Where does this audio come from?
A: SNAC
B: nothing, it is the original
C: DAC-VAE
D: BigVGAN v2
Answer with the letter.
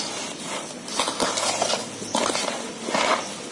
B